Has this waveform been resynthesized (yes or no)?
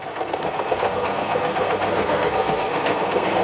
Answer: yes